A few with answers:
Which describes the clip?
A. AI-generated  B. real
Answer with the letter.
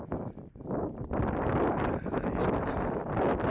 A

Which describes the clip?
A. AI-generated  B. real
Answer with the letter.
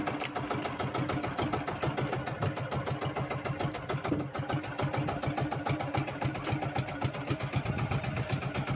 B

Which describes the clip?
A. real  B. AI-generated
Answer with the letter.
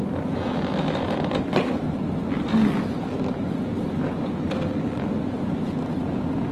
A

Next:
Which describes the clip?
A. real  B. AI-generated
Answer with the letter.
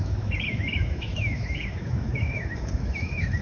B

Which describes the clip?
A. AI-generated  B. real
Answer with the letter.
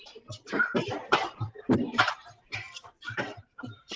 A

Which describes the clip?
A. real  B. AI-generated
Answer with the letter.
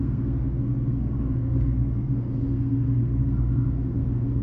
B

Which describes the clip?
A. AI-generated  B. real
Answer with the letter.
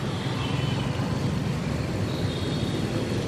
B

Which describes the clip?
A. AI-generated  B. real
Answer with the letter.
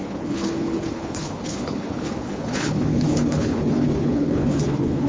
A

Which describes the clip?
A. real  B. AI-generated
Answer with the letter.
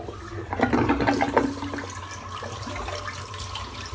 A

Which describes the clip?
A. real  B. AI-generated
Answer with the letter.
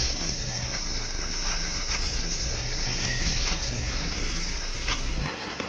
B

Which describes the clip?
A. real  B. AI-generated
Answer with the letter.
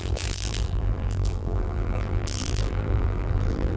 B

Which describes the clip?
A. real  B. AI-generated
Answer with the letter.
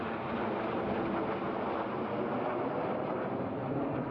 A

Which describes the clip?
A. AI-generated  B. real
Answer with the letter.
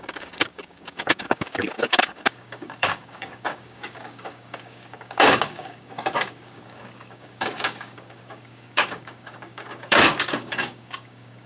A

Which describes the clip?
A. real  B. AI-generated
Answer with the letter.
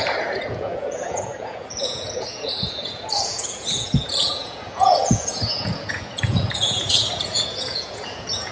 B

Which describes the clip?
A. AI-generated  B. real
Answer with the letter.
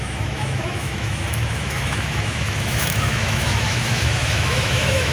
A